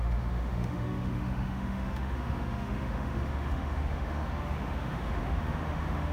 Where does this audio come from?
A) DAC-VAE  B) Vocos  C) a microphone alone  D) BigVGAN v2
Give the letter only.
A